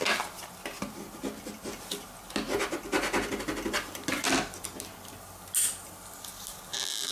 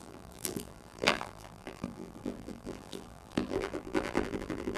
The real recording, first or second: first